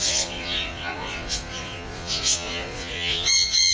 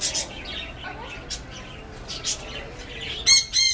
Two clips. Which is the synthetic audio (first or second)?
first